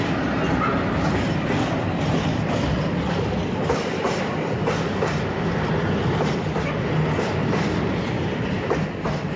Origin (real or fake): real